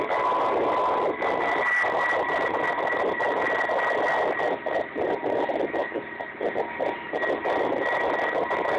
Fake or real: real